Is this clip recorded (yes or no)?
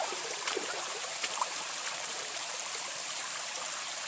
no